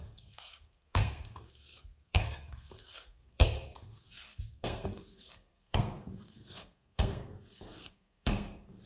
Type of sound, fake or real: fake